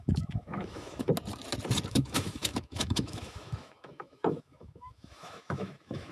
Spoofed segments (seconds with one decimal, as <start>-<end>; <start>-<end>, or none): 0.0-1.1; 1.9-6.1